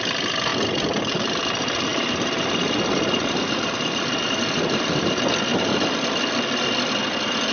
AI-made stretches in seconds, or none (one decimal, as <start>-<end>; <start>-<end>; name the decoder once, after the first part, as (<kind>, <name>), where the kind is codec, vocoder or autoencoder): none